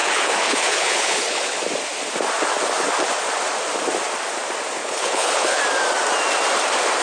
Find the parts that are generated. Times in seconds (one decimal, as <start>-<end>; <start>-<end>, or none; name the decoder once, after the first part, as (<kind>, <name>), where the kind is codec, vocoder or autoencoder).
0.0-1.6 (codec, HILCodec); 4.8-5.6